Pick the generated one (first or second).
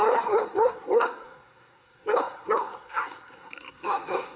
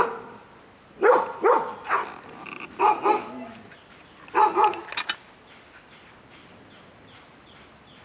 first